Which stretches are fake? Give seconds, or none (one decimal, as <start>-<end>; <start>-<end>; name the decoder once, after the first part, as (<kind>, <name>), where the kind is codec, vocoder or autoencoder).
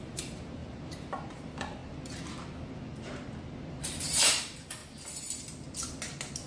0.0-1.8 (vocoder, BigVGAN v2); 3.7-4.8